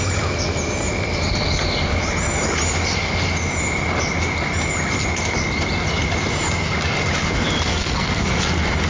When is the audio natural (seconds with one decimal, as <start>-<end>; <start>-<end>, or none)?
0.0-7.7; 8.3-8.9

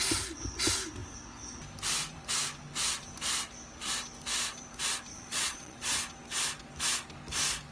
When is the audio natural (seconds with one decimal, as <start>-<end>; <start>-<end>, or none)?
0.0-5.1; 5.8-7.7

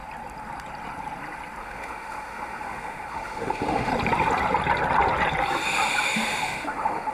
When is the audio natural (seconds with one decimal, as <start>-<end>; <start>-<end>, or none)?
0.0-1.6; 3.9-5.9

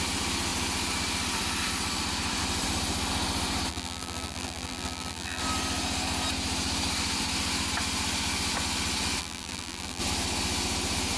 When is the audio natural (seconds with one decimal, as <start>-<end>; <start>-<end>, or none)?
0.0-3.7; 5.4-9.2; 10.0-11.2

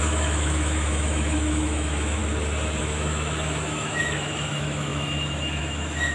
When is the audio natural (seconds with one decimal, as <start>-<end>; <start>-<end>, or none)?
2.2-2.8

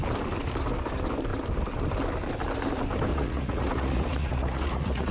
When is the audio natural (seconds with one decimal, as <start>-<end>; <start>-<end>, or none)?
0.0-3.1